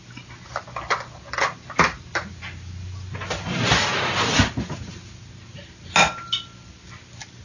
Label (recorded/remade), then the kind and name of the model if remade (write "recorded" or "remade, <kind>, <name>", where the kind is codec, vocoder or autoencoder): recorded